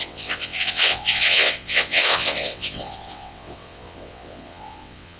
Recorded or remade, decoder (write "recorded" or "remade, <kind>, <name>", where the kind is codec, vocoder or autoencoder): remade, vocoder, WaveNeXt